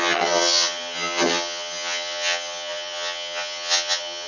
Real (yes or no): no